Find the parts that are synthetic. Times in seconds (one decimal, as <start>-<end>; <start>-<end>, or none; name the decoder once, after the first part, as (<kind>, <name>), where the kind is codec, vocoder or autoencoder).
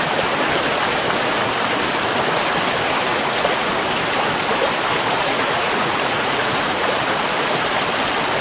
3.1-3.7 (vocoder, Vocos); 5.2-7.0